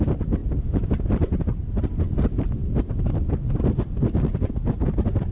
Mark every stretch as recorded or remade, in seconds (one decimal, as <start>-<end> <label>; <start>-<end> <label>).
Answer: 0.0-0.4 recorded; 0.4-0.9 remade; 0.9-5.3 recorded

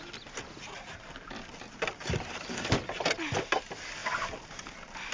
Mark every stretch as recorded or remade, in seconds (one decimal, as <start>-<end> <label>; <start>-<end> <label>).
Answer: 0.0-5.1 recorded

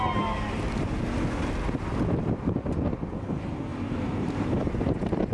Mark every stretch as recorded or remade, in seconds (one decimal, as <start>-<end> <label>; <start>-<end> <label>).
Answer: 0.0-3.7 recorded; 3.7-5.3 remade

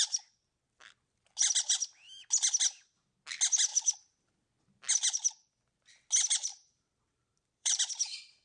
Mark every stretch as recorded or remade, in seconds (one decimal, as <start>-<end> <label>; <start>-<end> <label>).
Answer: 0.0-6.5 recorded; 6.5-7.8 remade; 7.8-8.4 recorded

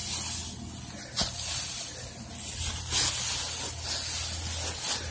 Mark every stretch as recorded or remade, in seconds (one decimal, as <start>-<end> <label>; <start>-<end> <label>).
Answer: 0.0-5.1 recorded

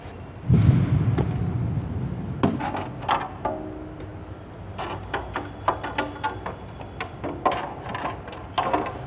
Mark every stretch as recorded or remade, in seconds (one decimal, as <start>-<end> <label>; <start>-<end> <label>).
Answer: 0.0-9.1 recorded

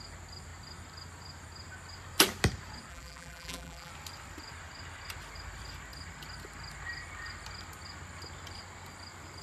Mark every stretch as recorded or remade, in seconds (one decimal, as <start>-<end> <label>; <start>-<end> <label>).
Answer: 0.0-2.9 recorded; 2.9-3.9 remade; 3.9-9.4 recorded